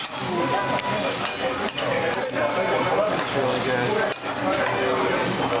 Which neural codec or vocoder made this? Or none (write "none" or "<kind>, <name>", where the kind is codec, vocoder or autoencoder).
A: none